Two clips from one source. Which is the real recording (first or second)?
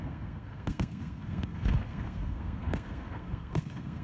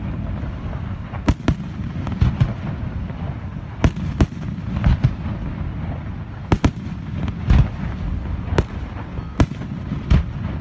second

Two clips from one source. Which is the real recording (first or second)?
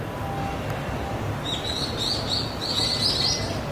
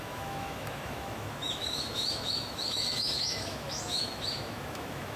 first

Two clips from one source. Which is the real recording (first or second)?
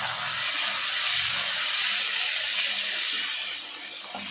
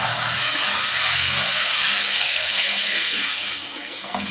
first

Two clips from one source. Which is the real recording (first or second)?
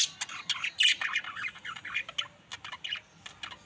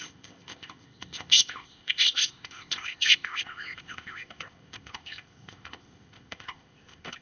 first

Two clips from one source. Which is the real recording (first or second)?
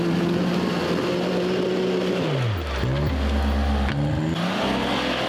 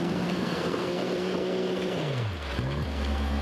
first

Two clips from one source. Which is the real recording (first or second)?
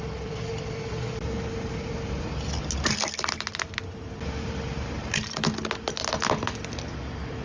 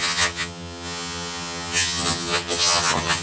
first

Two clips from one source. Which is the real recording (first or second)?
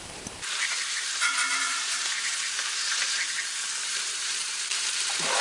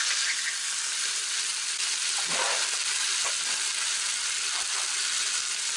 second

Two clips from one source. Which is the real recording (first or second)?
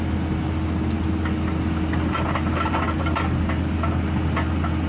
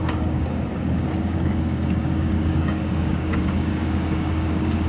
first